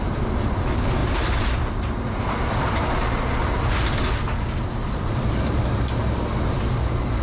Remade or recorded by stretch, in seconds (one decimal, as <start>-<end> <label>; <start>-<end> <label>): 0.0-1.0 recorded; 1.0-2.9 remade; 2.9-4.8 recorded; 4.8-5.6 remade; 5.6-7.2 recorded